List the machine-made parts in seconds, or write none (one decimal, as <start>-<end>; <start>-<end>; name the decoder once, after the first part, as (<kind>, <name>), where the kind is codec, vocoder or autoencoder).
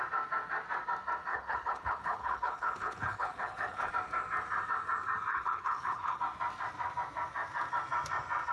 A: 1.3-3.9 (codec, HILCodec); 5.3-6.2